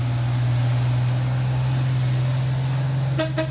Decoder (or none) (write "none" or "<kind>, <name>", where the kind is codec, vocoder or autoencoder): none